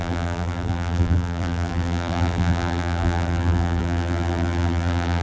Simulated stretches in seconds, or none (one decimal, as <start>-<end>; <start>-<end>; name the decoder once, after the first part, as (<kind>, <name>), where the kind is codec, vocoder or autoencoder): 0.0-5.2 (vocoder, BigVGAN v2)